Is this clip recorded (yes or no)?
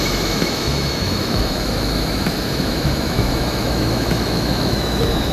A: no